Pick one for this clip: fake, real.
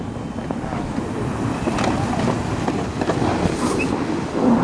real